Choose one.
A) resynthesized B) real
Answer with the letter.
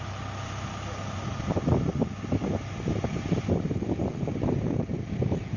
B